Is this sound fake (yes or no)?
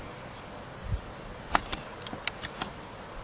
no